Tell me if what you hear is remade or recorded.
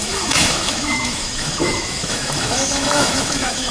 remade